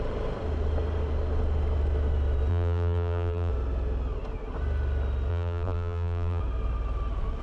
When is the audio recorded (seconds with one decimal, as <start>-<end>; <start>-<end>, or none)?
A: 0.0-2.5; 3.5-5.3; 6.4-7.4